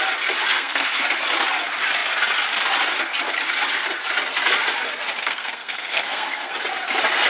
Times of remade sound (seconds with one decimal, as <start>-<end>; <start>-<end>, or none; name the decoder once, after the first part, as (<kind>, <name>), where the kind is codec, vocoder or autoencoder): 0.5-1.0 (codec, SNAC); 5.2-6.5